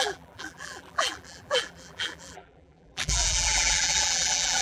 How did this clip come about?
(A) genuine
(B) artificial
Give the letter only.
B